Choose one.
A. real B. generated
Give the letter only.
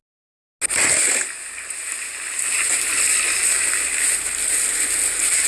A